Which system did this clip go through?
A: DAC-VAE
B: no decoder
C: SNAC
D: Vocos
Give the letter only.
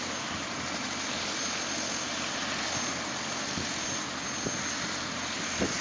B